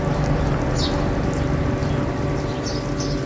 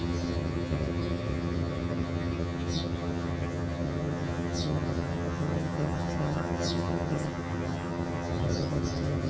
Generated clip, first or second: second